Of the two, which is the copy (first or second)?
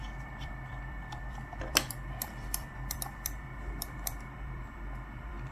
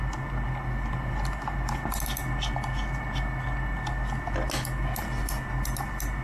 first